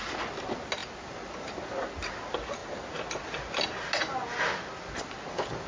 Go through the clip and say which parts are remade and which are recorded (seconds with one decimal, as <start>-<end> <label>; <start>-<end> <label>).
0.0-5.7 recorded